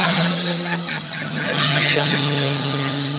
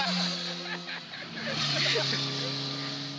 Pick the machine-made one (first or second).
first